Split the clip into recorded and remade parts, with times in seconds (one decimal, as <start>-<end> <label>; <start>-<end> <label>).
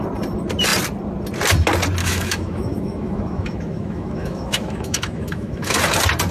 0.0-2.0 recorded; 2.0-5.8 remade; 5.8-6.3 recorded